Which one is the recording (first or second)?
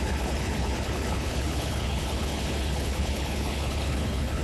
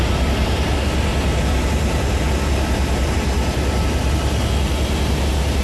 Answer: second